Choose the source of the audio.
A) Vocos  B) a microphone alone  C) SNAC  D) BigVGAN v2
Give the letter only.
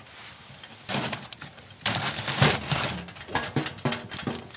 B